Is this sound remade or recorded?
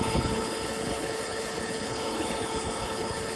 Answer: remade